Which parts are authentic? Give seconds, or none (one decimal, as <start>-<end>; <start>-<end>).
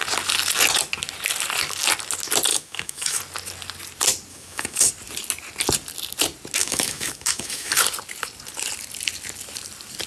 0.0-2.5; 3.2-4.3; 4.9-6.6; 7.7-10.1